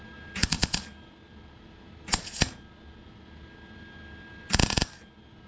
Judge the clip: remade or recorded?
recorded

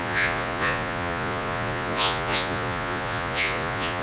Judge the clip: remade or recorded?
remade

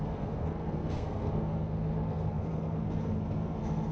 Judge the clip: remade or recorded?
remade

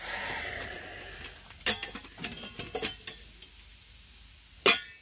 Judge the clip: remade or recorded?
recorded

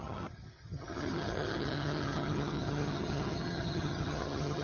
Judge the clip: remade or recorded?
remade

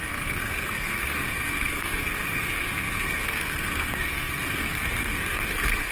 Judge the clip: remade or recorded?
remade